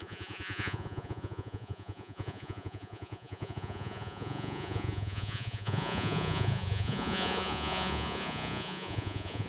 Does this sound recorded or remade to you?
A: remade